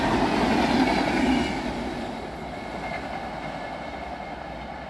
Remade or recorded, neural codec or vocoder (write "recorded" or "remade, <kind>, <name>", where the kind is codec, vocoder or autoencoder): recorded